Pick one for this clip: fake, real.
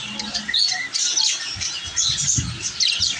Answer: real